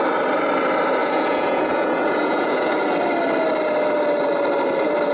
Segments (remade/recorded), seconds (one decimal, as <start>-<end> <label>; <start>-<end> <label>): 0.0-1.0 recorded; 1.0-2.7 remade; 2.7-5.1 recorded